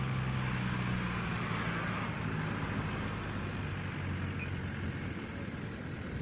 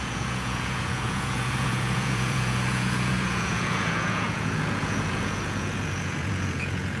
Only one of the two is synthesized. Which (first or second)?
second